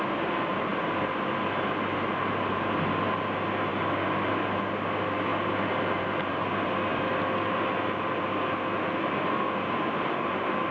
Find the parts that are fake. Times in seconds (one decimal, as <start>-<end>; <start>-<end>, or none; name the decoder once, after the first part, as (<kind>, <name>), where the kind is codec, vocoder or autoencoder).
3.7-4.6 (vocoder, BigVGAN v2)